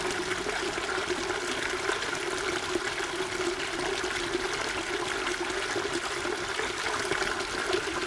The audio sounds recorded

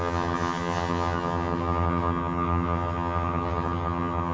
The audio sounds remade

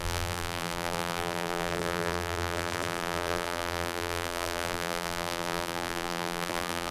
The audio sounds remade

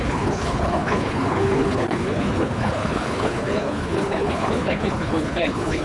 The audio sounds remade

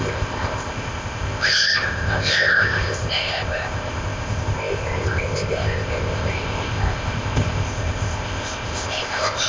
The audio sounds remade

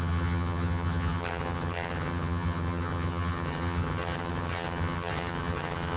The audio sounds remade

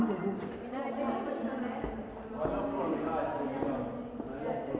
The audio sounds recorded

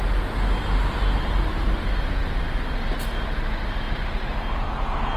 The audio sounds recorded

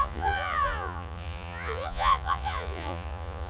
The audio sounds remade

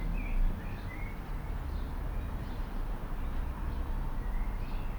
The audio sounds recorded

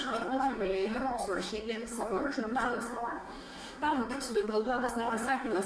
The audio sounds remade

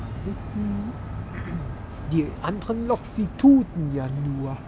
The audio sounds recorded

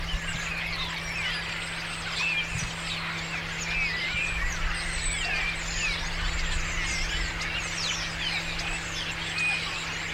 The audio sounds recorded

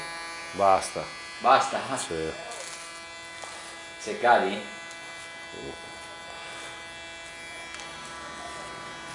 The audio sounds recorded